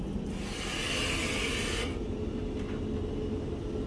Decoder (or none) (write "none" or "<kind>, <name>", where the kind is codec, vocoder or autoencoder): none